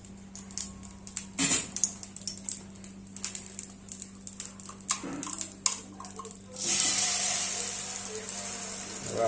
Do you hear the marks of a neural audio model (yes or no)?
no